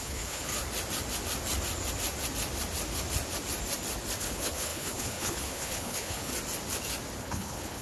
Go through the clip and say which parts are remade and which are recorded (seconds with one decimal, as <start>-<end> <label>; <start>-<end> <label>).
0.0-0.5 remade; 0.5-4.2 recorded; 4.2-6.3 remade; 6.3-7.2 recorded; 7.2-7.8 remade